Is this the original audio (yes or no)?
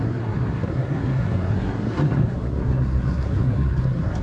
no